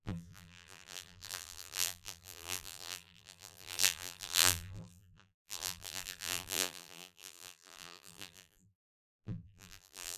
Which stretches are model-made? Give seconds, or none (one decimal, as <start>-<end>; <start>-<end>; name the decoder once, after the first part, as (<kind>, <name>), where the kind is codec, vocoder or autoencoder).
0.0-10.2 (vocoder, BigVGAN v2)